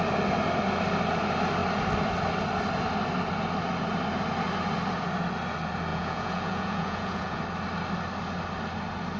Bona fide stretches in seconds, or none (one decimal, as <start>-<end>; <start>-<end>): 0.0-5.9; 7.4-9.2